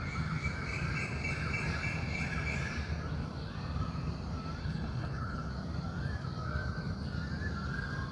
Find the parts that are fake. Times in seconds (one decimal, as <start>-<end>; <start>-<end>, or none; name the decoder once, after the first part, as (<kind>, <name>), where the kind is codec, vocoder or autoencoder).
4.6-5.5 (codec, HILCodec)